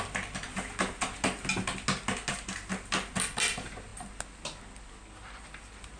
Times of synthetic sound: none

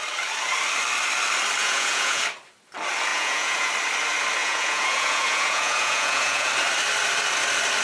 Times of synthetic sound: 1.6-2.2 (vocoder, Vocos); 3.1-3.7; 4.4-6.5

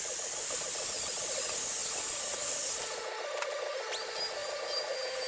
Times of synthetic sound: none

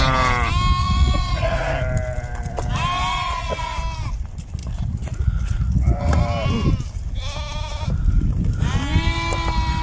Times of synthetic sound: 0.8-1.7 (vocoder, Vocos); 3.1-3.8; 4.6-6.2

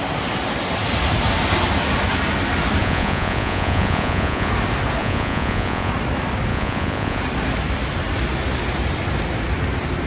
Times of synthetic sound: 2.8-4.5 (vocoder, Vocos); 5.0-5.9; 6.5-7.2

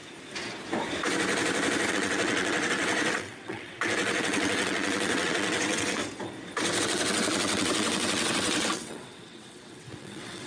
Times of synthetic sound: 1.9-6.0 (vocoder, WaveNeXt); 6.8-10.5

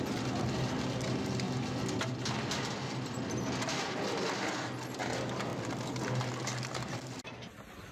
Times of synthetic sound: none